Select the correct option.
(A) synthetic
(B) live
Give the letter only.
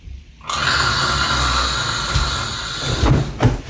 B